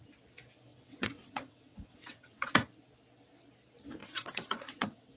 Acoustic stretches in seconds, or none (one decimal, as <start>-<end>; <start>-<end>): 0.0-0.7; 2.5-4.0